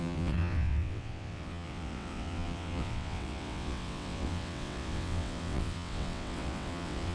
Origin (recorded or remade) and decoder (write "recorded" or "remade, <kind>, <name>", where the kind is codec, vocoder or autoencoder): remade, vocoder, WaveNeXt